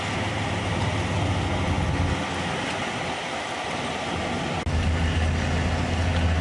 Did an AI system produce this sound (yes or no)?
no